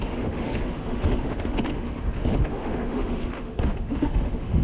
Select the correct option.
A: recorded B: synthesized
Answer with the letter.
B